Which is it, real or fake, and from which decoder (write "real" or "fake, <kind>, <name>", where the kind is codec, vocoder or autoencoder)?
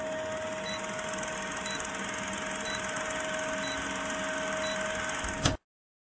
real